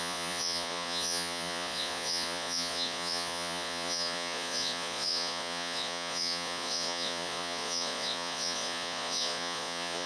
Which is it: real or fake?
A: fake